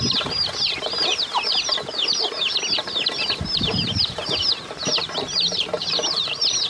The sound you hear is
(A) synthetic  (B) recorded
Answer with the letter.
A